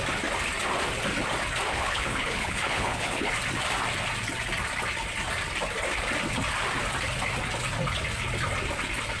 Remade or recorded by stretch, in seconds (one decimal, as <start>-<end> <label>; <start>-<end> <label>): 0.0-1.7 recorded; 1.7-3.3 remade; 3.3-9.2 recorded